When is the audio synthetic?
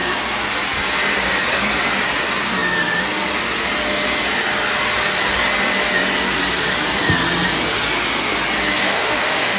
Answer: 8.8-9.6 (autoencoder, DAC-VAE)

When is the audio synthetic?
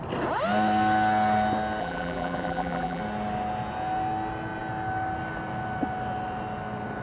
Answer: 1.8-3.0 (vocoder, BigVGAN v2)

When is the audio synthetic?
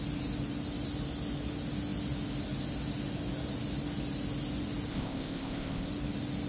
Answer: 4.9-5.9 (codec, ZipCodec)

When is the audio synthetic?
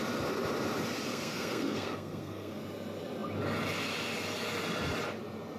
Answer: 1.1-2.6 (codec, SNAC)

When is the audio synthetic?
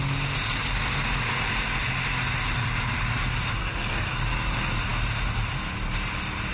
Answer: 3.6-4.2 (codec, SNAC)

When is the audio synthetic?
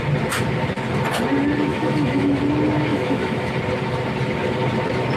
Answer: 1.7-2.4 (autoencoder, DAC-VAE); 2.9-3.5